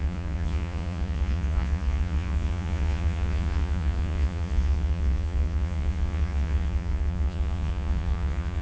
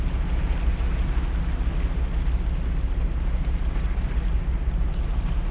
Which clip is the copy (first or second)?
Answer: first